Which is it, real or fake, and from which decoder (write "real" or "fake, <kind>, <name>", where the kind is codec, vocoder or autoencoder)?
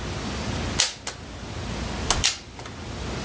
real